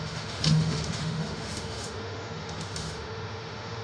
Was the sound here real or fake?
fake